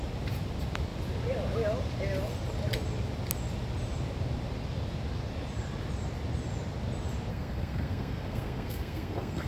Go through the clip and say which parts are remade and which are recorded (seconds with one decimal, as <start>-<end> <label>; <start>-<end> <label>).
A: 0.0-7.3 recorded; 7.3-9.5 remade